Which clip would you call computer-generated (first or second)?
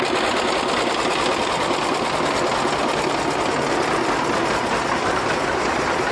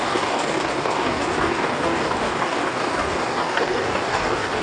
second